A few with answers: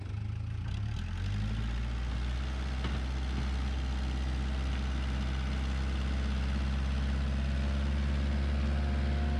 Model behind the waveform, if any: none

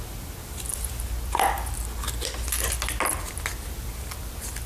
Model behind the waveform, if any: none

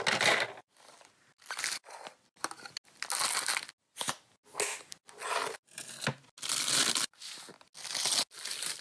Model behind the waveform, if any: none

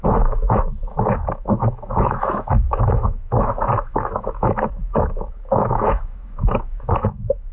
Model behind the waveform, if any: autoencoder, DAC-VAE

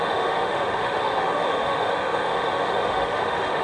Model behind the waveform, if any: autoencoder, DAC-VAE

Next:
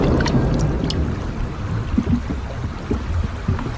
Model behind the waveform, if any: none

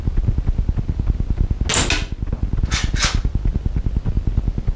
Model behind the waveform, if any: none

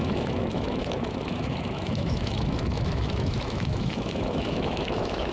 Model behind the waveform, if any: autoencoder, DAC-VAE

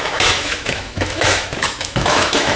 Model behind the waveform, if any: autoencoder, DAC-VAE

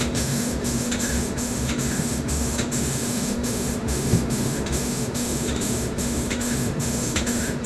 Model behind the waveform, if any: autoencoder, DAC-VAE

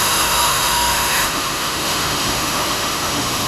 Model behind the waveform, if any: autoencoder, DAC-VAE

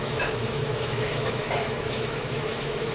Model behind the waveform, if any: autoencoder, DAC-VAE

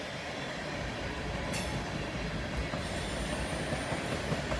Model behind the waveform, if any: none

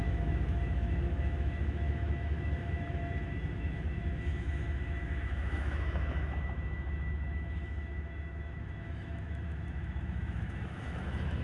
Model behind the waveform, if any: autoencoder, DAC-VAE